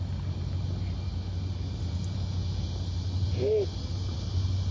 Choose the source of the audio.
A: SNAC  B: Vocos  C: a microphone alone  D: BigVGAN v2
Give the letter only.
C